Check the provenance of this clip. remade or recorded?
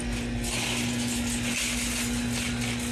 recorded